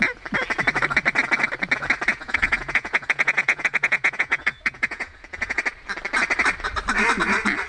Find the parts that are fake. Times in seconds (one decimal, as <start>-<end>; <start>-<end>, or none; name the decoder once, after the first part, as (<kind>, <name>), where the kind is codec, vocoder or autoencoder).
2.1-5.6 (vocoder, Vocos)